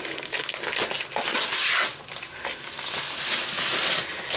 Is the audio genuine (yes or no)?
yes